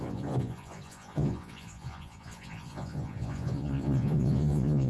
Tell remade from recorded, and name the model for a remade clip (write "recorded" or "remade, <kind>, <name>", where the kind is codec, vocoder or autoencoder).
remade, vocoder, Vocos